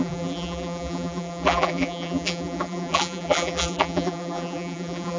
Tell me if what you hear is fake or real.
fake